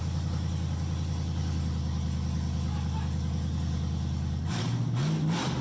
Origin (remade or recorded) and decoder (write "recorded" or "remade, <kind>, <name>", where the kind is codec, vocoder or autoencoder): recorded